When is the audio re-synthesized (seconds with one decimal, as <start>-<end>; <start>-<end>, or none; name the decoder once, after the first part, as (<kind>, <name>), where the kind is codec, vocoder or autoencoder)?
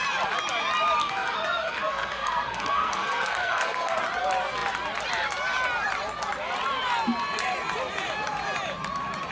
1.0-4.0 (codec, SNAC)